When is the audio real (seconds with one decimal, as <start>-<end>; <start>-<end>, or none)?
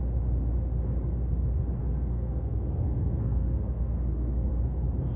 0.0-1.8; 4.5-5.2